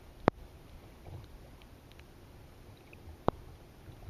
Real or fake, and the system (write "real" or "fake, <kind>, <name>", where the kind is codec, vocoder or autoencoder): real